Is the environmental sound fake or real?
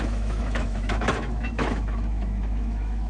fake